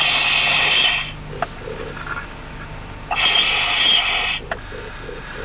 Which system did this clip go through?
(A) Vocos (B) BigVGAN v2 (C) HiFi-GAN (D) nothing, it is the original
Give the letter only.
D